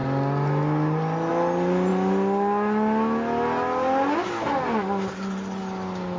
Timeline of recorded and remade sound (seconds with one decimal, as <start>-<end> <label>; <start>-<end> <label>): 0.0-6.2 recorded